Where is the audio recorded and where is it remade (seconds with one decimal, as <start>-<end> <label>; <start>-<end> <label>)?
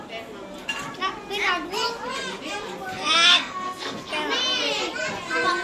0.0-2.9 recorded; 2.9-4.1 remade; 4.1-5.6 recorded